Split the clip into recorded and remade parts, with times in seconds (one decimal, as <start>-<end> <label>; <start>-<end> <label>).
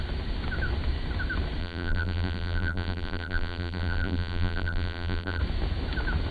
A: 0.0-1.6 recorded; 1.6-5.4 remade; 5.4-6.3 recorded